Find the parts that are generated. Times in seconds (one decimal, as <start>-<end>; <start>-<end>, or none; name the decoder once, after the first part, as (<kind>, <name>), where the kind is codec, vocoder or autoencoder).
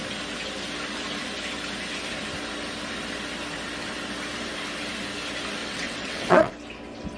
5.6-6.5 (vocoder, WaveNeXt)